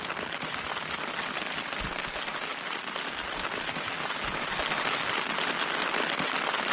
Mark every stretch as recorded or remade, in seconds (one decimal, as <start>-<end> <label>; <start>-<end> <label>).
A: 0.0-6.7 recorded